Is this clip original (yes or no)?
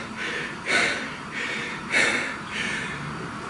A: no